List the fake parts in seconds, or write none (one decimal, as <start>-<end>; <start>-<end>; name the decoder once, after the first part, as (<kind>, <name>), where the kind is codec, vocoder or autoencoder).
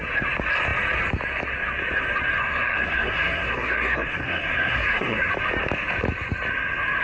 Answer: 2.4-5.3 (codec, SNAC)